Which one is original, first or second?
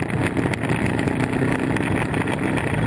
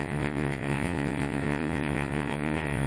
first